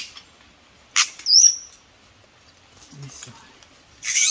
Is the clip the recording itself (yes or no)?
yes